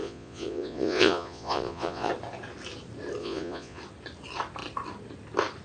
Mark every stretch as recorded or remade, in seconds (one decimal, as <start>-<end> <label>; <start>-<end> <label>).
0.0-2.1 remade; 2.1-3.2 recorded; 3.2-3.8 remade; 3.8-5.6 recorded

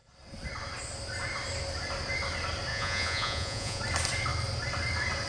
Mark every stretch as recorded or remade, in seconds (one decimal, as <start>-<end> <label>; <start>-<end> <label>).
0.0-2.7 recorded; 2.7-3.8 remade; 3.8-5.3 recorded

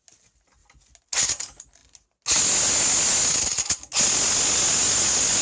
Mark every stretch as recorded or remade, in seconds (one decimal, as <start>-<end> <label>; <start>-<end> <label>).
0.0-5.4 recorded

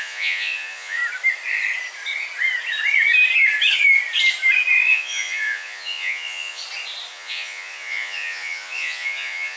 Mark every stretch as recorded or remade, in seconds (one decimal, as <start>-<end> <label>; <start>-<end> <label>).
0.0-1.0 remade; 1.0-4.9 recorded; 4.9-6.6 remade; 6.6-7.1 recorded; 7.1-9.6 remade

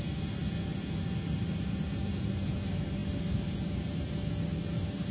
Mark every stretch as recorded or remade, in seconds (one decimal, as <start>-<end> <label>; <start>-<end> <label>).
0.0-5.1 recorded

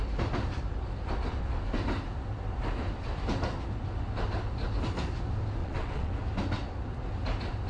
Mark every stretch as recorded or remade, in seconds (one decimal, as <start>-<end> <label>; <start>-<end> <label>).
0.0-5.6 recorded; 5.6-6.1 remade; 6.1-7.7 recorded

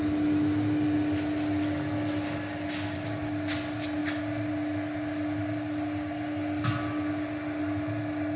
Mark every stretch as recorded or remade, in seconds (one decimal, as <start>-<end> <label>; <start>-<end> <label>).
0.0-8.4 recorded

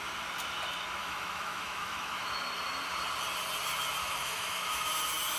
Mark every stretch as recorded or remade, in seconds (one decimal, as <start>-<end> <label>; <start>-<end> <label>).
0.0-1.0 recorded; 1.0-2.3 remade; 2.3-4.0 recorded; 4.0-4.9 remade; 4.9-5.4 recorded